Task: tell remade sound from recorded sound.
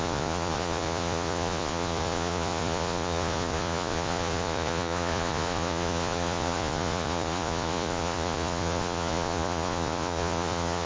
remade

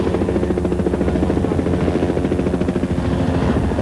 recorded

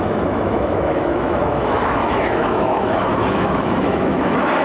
remade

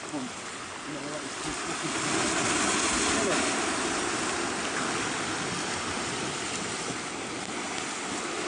recorded